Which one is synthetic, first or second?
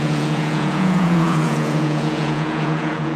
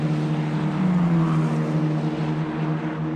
first